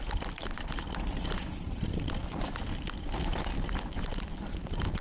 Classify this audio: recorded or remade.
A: recorded